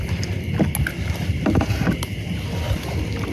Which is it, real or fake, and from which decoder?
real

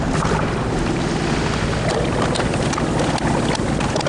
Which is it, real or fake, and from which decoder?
real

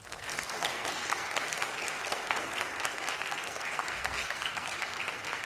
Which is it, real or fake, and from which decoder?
fake, codec, SNAC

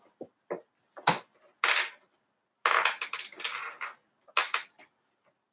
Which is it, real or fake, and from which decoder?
real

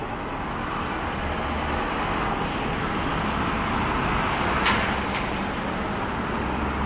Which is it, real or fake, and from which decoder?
real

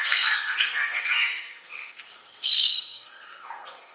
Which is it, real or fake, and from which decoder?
fake, codec, SNAC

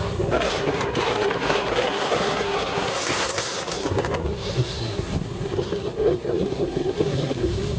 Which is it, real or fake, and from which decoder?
fake, codec, SNAC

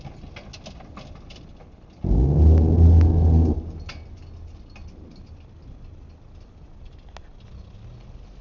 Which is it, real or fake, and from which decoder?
real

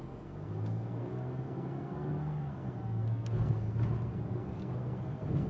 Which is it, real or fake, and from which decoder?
fake, codec, SNAC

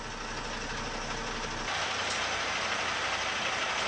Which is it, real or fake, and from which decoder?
real